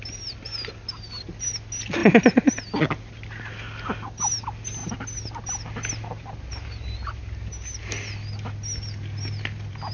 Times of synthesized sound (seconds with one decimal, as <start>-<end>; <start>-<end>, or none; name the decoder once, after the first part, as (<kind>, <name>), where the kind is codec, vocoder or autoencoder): none